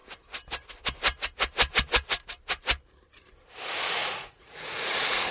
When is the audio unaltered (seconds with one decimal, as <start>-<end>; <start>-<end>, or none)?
0.0-4.0

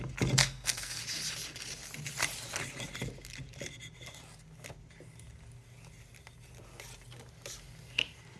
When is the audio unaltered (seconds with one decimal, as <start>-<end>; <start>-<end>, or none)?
0.0-0.4; 1.0-8.4

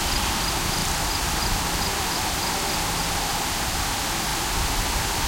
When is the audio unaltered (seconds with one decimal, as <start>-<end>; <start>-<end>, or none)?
0.0-5.3

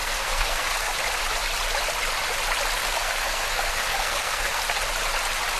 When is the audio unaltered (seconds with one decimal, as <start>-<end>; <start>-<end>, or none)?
0.9-2.8; 4.6-5.6

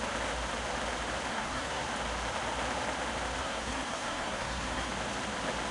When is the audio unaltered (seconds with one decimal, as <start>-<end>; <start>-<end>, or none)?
0.0-1.3; 1.8-3.4; 4.9-5.7

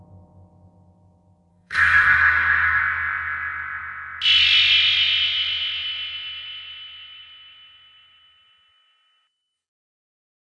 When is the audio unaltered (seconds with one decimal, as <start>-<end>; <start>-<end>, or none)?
0.0-1.5; 2.8-10.5

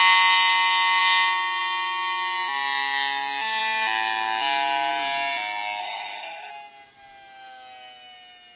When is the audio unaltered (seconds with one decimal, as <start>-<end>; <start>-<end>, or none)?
0.0-5.8; 6.5-8.6

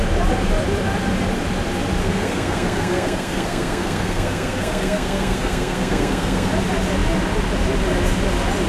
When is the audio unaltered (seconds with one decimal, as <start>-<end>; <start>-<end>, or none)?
0.0-2.0; 6.5-8.7